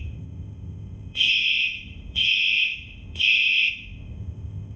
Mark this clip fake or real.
fake